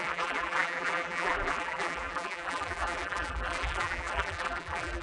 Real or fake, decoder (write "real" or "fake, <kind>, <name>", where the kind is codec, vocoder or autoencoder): fake, vocoder, BigVGAN v2